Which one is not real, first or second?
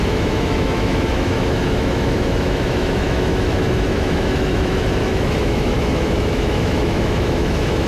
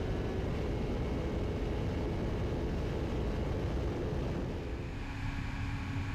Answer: first